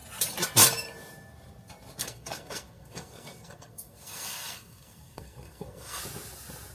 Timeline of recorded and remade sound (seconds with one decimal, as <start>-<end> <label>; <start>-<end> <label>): 0.0-2.0 recorded; 2.0-6.0 remade; 6.0-6.7 recorded